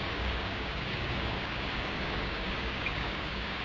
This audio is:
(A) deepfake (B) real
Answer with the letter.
A